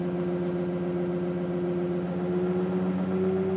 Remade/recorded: recorded